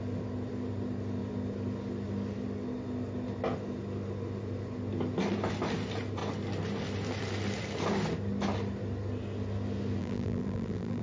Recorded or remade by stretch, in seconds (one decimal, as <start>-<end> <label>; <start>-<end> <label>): 0.0-10.0 recorded; 10.0-11.0 remade

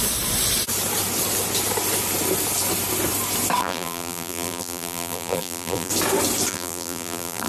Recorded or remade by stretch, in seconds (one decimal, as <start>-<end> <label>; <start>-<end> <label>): 0.0-3.6 recorded; 3.6-5.9 remade; 5.9-6.5 recorded; 6.5-7.5 remade

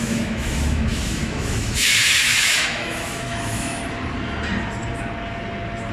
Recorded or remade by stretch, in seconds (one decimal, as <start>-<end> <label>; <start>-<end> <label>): 0.0-3.8 remade; 3.8-5.9 recorded

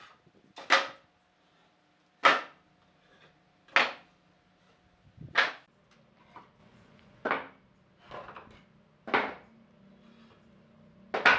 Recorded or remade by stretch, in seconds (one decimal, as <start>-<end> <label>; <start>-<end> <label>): 0.0-6.6 recorded; 6.6-7.3 remade; 7.3-11.4 recorded

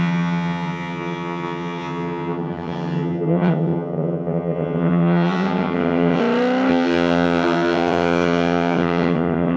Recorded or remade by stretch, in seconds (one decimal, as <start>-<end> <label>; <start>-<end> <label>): 0.0-6.2 remade; 6.2-6.7 recorded; 6.7-9.6 remade

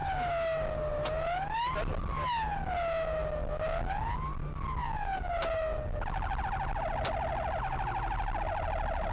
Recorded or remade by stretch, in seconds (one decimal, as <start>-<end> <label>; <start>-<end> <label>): 0.0-9.1 recorded

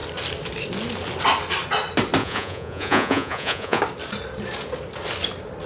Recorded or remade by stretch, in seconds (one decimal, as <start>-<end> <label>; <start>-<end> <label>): 0.0-2.2 recorded; 2.2-3.8 remade; 3.8-5.7 recorded